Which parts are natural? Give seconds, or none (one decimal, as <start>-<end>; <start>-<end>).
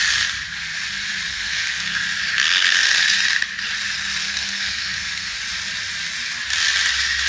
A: 0.0-1.3; 2.0-4.2; 5.4-7.3